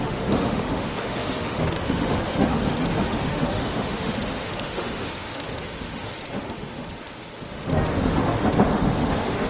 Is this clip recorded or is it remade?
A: remade